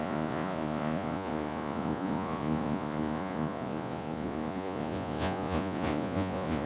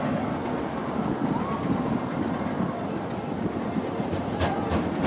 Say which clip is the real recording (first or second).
second